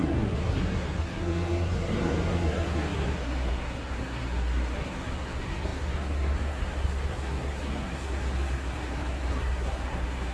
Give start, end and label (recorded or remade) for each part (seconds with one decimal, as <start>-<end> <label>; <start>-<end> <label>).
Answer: 0.0-10.3 remade